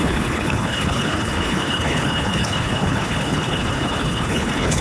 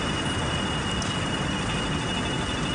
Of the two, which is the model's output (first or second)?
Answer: first